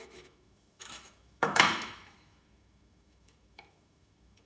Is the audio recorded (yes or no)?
no